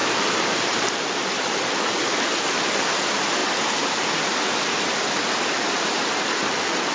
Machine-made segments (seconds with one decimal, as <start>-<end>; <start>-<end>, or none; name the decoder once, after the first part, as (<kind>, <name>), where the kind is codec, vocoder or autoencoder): 0.0-1.6 (vocoder, BigVGAN v2)